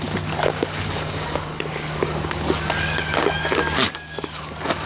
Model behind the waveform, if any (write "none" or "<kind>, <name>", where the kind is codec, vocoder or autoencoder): codec, DAC